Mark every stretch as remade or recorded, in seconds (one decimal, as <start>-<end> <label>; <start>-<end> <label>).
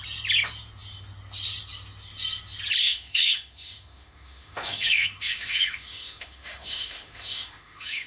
0.0-2.8 recorded; 2.8-8.1 remade